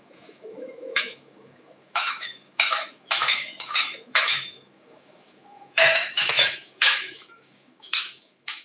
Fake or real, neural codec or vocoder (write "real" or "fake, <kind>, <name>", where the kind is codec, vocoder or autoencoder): fake, autoencoder, DAC-VAE